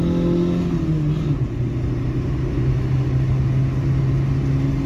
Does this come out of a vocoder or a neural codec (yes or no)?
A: no